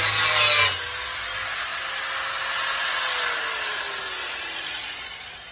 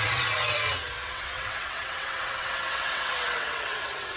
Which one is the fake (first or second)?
second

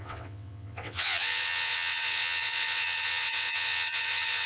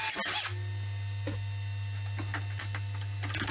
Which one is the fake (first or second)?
first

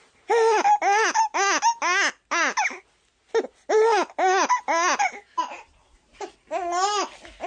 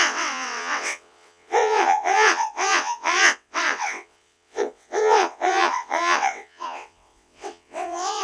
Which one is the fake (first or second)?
second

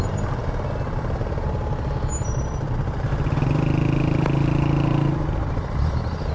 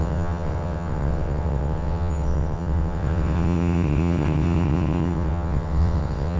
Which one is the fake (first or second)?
second